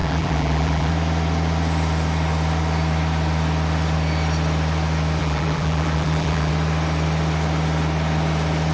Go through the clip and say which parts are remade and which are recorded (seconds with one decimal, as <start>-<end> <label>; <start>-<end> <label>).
0.0-0.9 remade; 0.9-5.2 recorded; 5.2-6.5 remade; 6.5-8.7 recorded